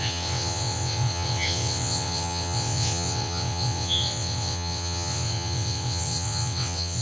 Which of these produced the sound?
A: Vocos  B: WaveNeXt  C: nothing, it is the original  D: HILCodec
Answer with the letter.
B